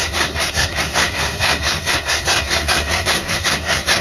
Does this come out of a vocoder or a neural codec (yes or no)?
yes